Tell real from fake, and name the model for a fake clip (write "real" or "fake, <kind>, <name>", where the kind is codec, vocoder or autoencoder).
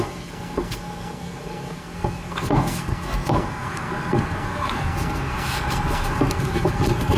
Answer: fake, codec, SNAC